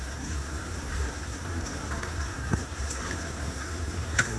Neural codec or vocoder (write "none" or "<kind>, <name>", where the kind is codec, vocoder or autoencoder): codec, SNAC